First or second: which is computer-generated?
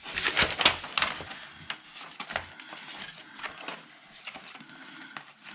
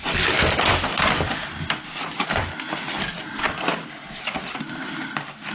second